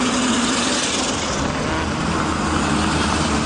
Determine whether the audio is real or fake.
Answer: real